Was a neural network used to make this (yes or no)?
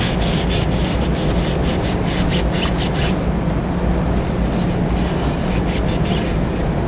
no